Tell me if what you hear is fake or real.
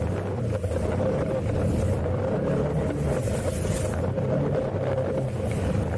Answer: real